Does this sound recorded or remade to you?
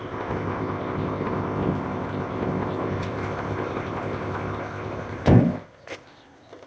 remade